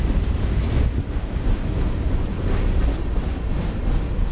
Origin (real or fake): real